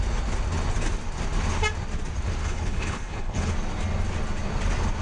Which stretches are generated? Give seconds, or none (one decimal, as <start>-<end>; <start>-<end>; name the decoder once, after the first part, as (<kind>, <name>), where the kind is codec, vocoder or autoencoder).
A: 2.4-3.5 (codec, HILCodec)